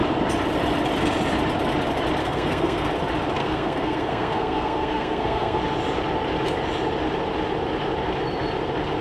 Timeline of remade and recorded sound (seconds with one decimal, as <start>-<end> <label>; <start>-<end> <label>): 0.0-2.2 recorded; 2.2-2.9 remade; 2.9-3.4 recorded; 3.4-5.6 remade; 5.6-9.0 recorded